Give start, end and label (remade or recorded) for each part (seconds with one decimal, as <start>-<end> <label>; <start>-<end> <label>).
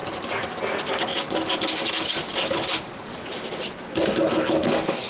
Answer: 0.0-0.9 recorded; 0.9-3.1 remade; 3.1-4.3 recorded; 4.3-5.1 remade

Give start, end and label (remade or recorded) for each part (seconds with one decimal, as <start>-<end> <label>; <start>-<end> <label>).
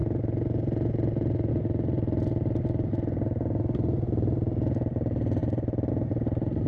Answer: 0.0-6.7 recorded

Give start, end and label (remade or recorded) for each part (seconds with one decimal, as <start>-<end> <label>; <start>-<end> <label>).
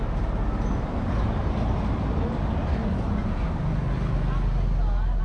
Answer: 0.0-5.2 recorded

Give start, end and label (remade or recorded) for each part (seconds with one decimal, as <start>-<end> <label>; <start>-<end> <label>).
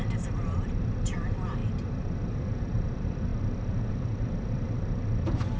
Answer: 0.0-5.6 recorded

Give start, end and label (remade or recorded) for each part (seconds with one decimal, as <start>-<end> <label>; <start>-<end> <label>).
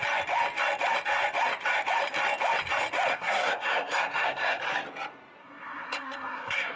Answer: 0.0-3.1 recorded; 3.1-4.6 remade; 4.6-5.4 recorded; 5.4-6.8 remade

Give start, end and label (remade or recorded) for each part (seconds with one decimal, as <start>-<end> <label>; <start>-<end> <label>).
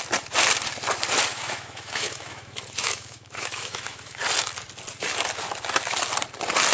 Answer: 0.0-1.3 recorded; 1.3-4.2 remade; 4.2-6.7 recorded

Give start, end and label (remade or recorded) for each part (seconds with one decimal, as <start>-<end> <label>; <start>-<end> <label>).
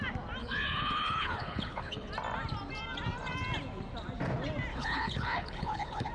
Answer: 0.0-0.4 recorded; 0.4-2.1 remade; 2.1-4.7 recorded; 4.7-6.1 remade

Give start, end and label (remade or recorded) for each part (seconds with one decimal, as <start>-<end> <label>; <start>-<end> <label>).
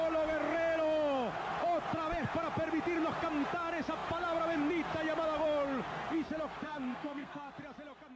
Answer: 0.0-6.6 recorded; 6.6-7.5 remade; 7.5-8.2 recorded